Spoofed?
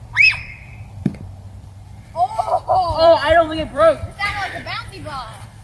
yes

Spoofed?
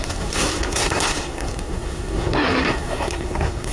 yes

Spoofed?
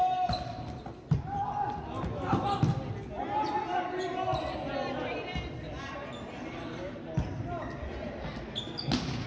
no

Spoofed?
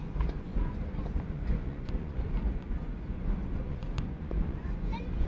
yes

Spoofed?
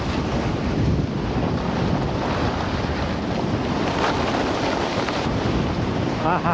no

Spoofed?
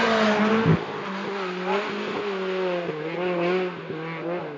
no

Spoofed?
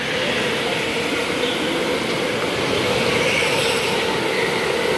no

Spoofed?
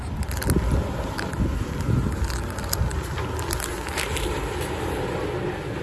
no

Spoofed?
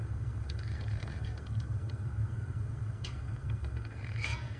yes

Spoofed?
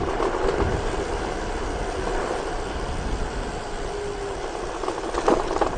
no